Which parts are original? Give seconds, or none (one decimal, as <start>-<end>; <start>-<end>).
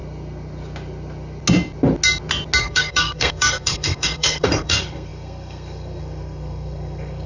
0.0-2.6